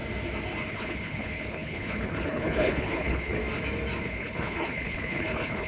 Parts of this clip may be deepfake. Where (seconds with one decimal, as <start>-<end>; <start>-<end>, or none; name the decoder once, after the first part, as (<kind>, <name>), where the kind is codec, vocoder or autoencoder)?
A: 0.7-3.4 (codec, HILCodec); 4.0-5.7